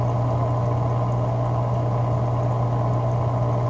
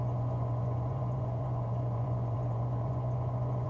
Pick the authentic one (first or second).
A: first